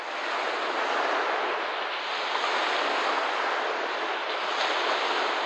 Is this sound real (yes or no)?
yes